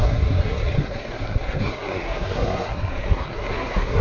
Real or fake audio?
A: fake